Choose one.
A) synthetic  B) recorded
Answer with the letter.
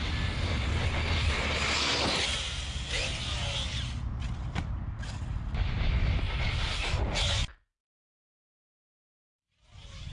B